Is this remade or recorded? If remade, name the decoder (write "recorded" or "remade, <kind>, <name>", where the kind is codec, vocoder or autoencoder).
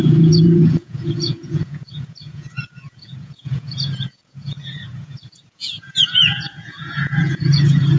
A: remade, vocoder, Vocos